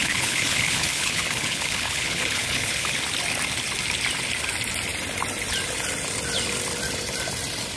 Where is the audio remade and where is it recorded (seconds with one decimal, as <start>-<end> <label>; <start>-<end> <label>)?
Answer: 0.0-2.9 remade; 2.9-7.8 recorded